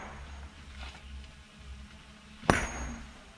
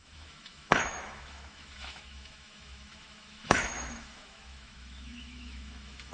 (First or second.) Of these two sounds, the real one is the first